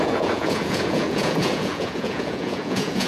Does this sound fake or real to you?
fake